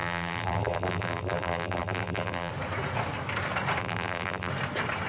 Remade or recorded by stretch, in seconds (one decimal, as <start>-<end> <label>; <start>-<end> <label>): 0.0-2.5 remade; 2.5-3.8 recorded; 3.8-4.5 remade; 4.5-5.1 recorded

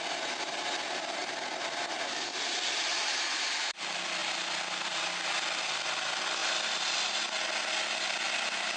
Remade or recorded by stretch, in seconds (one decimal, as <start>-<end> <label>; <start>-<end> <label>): 0.0-6.4 remade; 6.4-8.8 recorded